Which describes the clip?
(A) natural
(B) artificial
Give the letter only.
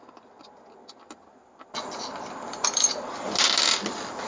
A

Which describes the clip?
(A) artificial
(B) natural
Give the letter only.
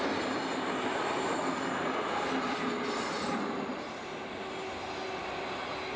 B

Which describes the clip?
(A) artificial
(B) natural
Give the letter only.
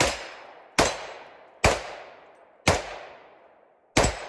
B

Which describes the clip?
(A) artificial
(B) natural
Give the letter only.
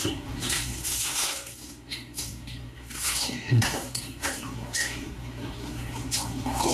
A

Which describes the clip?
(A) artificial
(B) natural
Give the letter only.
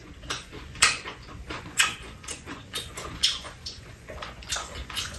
A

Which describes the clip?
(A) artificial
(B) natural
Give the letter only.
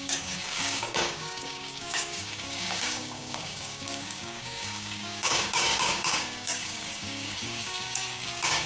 A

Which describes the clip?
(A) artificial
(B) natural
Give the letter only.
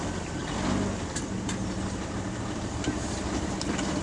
A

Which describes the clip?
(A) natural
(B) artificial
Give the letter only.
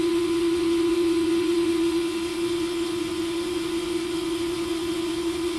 B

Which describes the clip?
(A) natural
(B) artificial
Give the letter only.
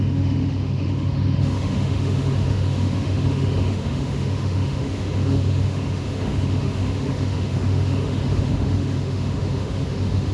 B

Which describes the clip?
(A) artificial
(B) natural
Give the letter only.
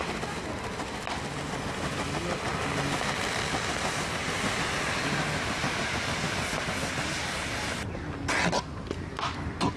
B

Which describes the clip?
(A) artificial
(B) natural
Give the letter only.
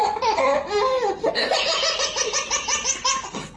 B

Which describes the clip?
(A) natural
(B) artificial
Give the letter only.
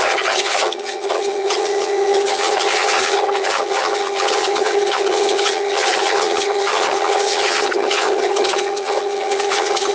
B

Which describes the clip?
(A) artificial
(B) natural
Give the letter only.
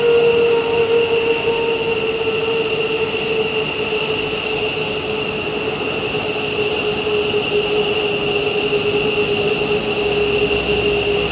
B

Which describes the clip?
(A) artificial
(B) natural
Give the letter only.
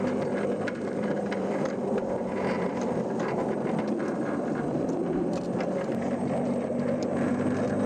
A